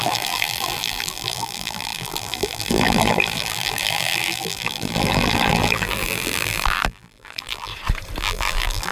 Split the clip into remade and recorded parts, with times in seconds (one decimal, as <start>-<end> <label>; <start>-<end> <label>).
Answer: 0.0-7.7 remade; 7.7-8.2 recorded; 8.2-8.9 remade